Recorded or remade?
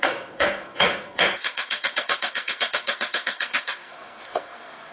remade